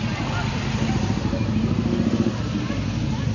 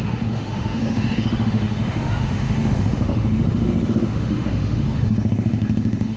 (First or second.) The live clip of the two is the first